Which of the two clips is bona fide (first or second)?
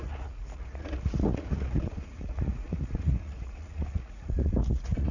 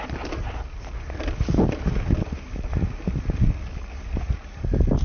second